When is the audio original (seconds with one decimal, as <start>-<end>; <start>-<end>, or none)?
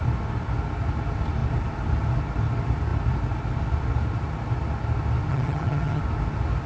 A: 0.0-5.3; 6.0-6.7